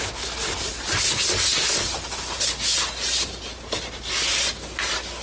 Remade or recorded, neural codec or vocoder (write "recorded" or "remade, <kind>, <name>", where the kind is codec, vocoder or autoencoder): recorded